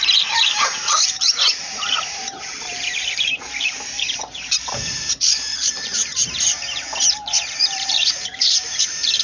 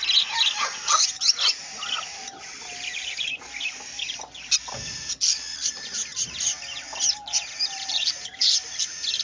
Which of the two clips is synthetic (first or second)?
first